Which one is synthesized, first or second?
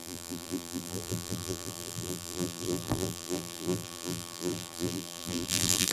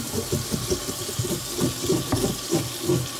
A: first